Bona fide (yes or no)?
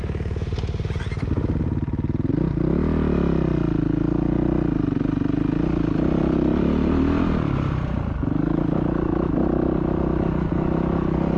yes